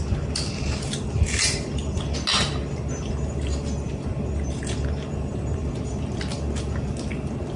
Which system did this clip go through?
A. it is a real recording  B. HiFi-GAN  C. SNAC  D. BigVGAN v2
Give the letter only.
A